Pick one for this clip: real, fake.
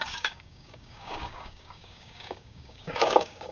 fake